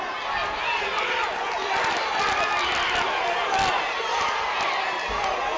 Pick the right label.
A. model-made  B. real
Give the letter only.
B